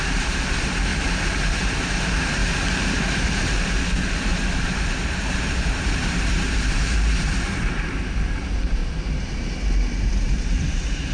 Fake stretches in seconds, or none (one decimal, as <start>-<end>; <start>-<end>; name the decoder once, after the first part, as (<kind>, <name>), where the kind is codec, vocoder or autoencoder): 0.0-0.9 (vocoder, BigVGAN v2); 1.5-2.4; 3.4-8.8; 10.0-11.1